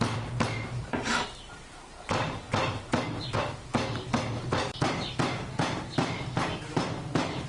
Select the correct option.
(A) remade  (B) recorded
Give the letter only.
B